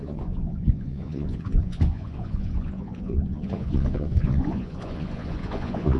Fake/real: fake